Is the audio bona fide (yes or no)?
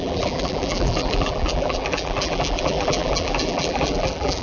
no